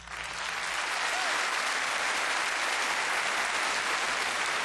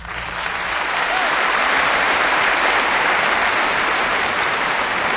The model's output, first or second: second